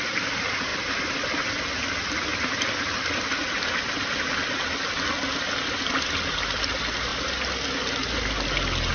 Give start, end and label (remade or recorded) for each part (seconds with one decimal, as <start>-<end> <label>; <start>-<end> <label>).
0.0-8.9 recorded